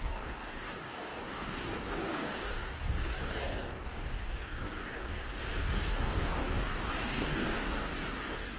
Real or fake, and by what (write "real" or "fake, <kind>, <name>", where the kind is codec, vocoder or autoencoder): fake, codec, DAC